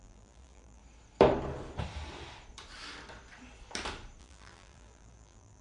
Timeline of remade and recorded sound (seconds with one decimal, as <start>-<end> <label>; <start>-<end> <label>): 0.0-0.8 remade; 0.8-4.2 recorded; 4.2-5.6 remade